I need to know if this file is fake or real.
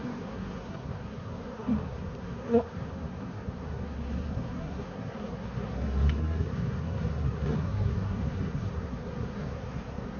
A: fake